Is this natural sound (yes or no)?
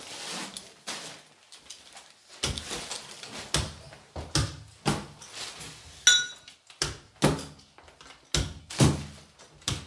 yes